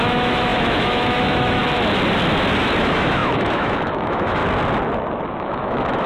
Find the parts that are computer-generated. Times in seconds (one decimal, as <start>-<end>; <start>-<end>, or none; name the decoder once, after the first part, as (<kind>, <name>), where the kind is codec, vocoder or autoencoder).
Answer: 0.0-1.6 (autoencoder, DAC-VAE); 2.8-4.4; 5.3-6.1